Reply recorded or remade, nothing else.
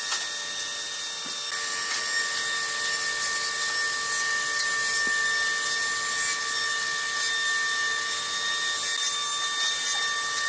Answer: recorded